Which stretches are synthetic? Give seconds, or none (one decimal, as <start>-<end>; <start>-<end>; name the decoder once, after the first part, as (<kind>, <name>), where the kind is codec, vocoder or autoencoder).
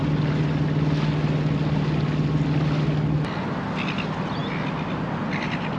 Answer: none